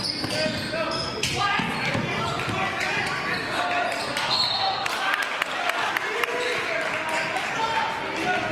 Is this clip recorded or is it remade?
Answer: recorded